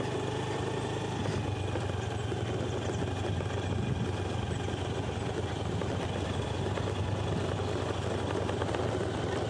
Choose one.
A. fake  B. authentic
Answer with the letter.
B